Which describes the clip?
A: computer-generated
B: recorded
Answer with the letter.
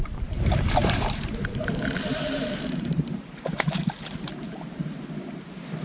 A